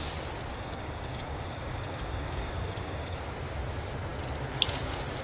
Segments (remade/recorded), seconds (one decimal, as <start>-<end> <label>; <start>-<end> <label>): 0.0-0.5 recorded; 0.5-3.2 remade; 3.2-5.2 recorded